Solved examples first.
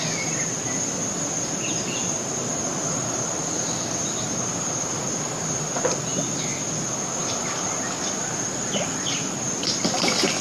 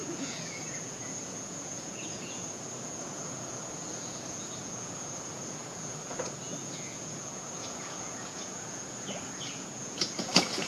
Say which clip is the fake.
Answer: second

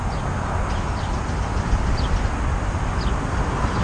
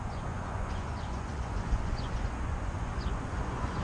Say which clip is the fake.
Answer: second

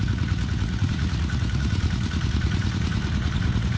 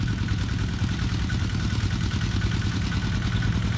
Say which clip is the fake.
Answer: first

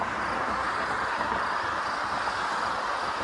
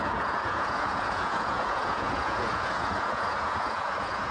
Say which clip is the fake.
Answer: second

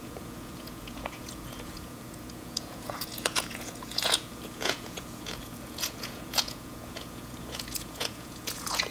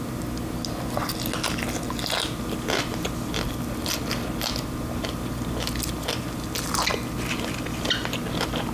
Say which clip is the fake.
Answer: first